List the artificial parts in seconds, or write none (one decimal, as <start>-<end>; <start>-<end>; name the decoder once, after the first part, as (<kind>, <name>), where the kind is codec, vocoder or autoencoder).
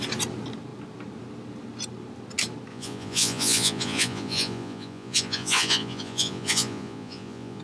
2.7-7.6 (vocoder, Vocos)